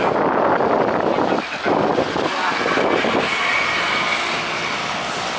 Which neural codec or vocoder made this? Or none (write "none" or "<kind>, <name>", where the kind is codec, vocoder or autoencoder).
none